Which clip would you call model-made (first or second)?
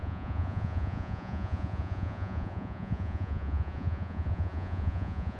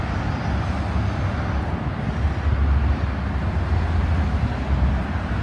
first